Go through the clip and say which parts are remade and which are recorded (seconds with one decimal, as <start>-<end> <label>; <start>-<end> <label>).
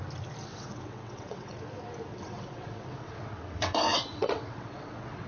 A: 0.0-0.5 recorded; 0.5-1.6 remade; 1.6-2.1 recorded; 2.1-5.3 remade